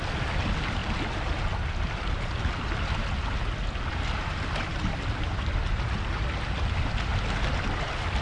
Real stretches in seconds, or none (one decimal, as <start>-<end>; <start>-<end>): 0.0-8.2